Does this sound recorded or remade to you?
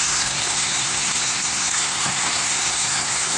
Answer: remade